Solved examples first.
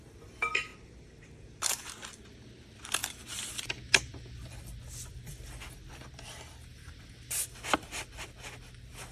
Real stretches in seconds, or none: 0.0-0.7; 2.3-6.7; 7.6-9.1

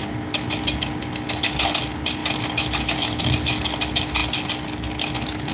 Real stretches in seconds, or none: 0.0-2.2; 3.2-4.2; 5.1-5.5

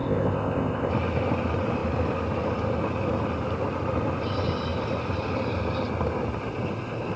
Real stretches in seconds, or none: 0.9-7.2

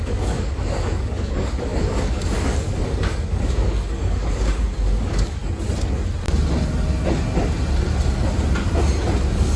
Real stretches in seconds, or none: 5.4-9.2

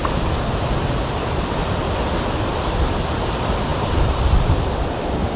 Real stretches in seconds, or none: 0.0-5.4

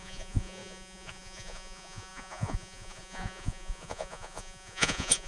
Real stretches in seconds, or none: none

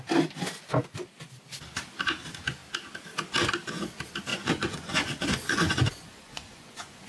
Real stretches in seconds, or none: 0.0-4.3